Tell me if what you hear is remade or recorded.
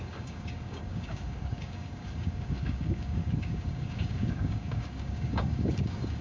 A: remade